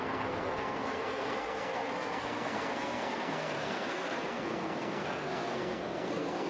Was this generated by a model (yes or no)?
yes